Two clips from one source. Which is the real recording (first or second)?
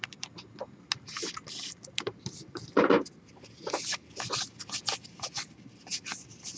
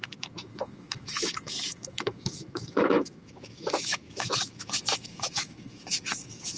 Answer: first